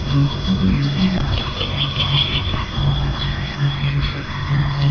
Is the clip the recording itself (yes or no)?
no